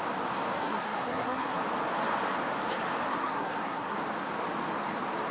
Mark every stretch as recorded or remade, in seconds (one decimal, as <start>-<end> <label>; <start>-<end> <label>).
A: 0.0-0.6 recorded; 0.6-1.6 remade; 1.6-3.1 recorded; 3.1-4.0 remade; 4.0-5.3 recorded